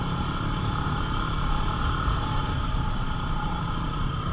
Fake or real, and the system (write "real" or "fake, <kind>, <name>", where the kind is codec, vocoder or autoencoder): fake, vocoder, BigVGAN v2